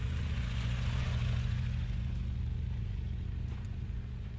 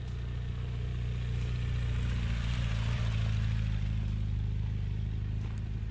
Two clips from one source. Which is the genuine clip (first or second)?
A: second